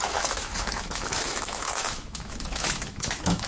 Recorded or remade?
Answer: remade